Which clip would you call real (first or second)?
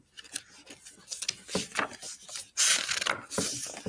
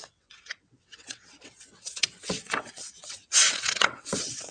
first